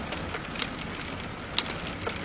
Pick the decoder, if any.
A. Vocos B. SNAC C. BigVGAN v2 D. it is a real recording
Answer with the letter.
D